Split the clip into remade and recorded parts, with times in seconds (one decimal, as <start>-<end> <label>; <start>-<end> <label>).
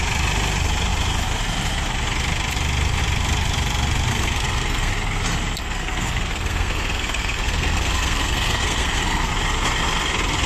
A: 0.0-4.1 recorded; 4.1-4.9 remade; 4.9-5.6 recorded; 5.6-9.3 remade; 9.3-10.5 recorded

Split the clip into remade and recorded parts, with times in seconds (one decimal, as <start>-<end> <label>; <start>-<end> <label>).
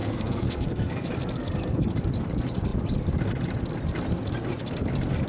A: 0.0-1.1 remade; 1.1-5.3 recorded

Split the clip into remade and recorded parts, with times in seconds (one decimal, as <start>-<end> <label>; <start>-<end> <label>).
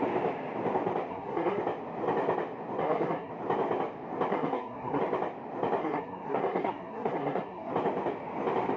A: 0.0-1.1 recorded; 1.1-1.6 remade; 1.6-2.8 recorded; 2.8-3.3 remade; 3.3-4.3 recorded; 4.3-5.0 remade; 5.0-5.8 recorded; 5.8-7.7 remade; 7.7-8.8 recorded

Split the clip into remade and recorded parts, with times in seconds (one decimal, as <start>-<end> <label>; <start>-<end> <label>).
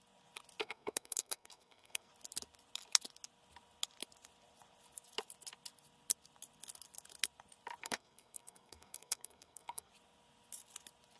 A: 0.0-0.6 recorded; 0.6-2.1 remade; 2.1-7.8 recorded; 7.8-9.9 remade; 9.9-11.2 recorded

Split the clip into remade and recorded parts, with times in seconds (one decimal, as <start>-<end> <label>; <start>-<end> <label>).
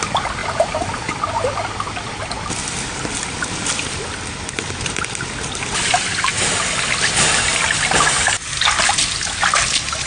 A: 0.0-10.1 recorded